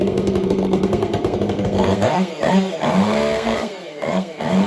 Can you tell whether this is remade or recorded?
remade